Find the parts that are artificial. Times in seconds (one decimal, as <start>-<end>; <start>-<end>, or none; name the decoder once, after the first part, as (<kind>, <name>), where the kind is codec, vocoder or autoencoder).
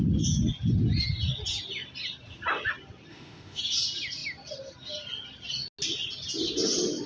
3.1-3.6 (autoencoder, DAC-VAE)